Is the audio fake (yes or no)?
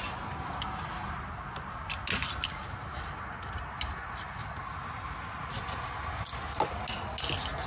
no